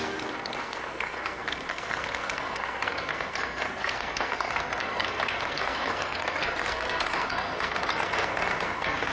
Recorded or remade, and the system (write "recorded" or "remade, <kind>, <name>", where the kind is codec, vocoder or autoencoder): remade, codec, SNAC